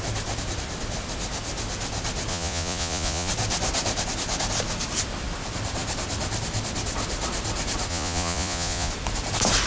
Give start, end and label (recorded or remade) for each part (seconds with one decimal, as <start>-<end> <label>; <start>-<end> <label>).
0.0-2.3 recorded; 2.3-3.3 remade; 3.3-7.9 recorded; 7.9-8.9 remade; 8.9-9.7 recorded

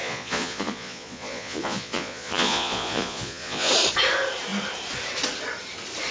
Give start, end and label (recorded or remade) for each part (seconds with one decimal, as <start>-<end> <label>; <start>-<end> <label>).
0.0-3.7 remade; 3.7-6.1 recorded

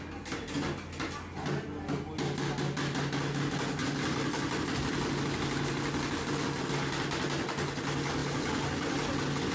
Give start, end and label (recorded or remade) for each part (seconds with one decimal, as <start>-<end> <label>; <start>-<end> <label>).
0.0-9.5 recorded